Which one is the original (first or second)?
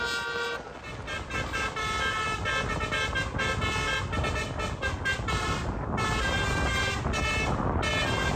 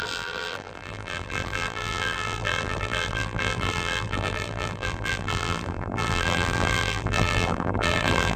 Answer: first